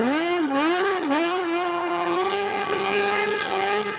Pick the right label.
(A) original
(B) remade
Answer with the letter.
B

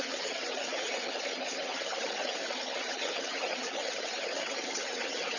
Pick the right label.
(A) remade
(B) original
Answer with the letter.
A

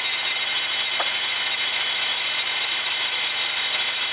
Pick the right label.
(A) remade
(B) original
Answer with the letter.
B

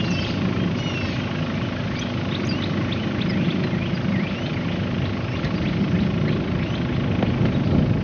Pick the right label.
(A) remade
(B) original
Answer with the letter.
B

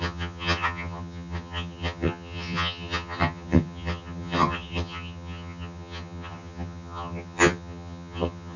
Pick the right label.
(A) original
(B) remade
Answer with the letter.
B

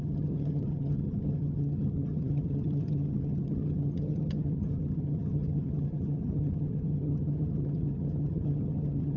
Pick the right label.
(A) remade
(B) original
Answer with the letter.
A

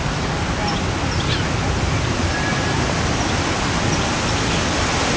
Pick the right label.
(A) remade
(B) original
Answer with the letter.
B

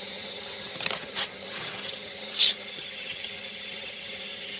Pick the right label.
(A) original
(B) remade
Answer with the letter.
B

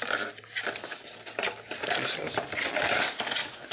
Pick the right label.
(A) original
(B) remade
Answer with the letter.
A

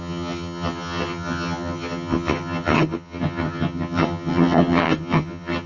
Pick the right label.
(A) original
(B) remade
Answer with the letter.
B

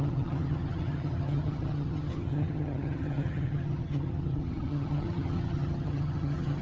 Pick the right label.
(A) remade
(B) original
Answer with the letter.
A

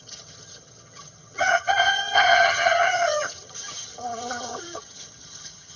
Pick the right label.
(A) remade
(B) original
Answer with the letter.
A